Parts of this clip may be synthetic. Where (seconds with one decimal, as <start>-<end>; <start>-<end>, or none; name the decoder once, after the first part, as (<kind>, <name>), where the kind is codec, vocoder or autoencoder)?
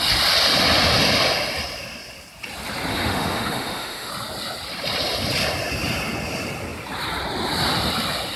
2.9-4.1 (autoencoder, DAC-VAE)